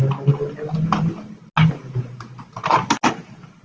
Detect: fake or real real